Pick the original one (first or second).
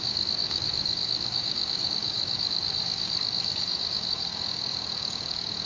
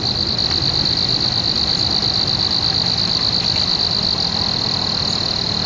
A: second